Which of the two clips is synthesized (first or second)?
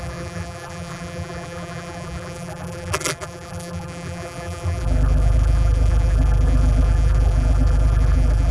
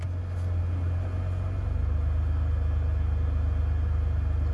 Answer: first